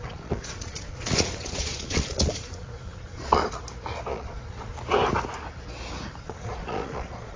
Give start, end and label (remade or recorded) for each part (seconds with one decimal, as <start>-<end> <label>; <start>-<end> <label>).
0.0-3.4 remade; 3.4-4.1 recorded; 4.1-4.7 remade; 4.7-6.2 recorded; 6.2-7.4 remade

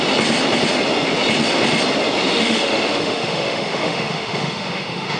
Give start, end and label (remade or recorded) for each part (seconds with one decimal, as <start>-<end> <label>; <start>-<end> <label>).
0.0-2.3 recorded; 2.3-5.2 remade